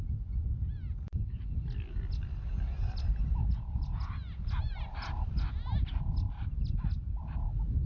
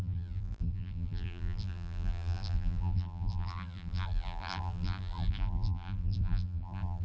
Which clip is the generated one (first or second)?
second